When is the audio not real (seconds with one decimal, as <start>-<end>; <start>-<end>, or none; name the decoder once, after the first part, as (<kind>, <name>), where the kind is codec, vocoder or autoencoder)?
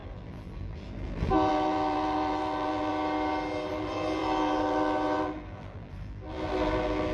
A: 0.0-2.9 (vocoder, BigVGAN v2); 3.7-7.1